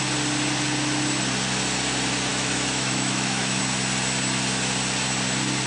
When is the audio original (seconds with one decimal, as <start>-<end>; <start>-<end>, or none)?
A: 0.0-2.3; 3.6-5.7